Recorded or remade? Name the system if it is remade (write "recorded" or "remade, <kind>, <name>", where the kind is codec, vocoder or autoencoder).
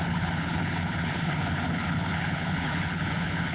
remade, codec, HILCodec